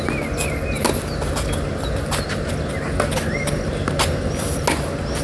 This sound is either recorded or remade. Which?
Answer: recorded